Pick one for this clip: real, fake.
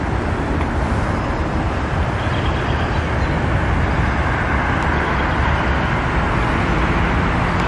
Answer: real